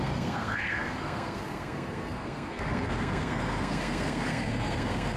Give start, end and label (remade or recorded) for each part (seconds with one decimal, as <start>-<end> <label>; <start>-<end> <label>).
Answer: 0.0-5.2 remade